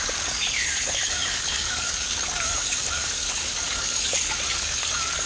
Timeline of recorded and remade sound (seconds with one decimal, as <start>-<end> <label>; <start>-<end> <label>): 0.0-5.3 remade